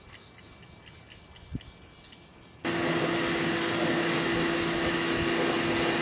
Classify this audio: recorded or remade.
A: recorded